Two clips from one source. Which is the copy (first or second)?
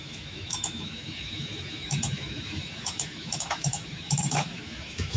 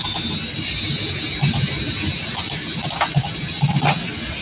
first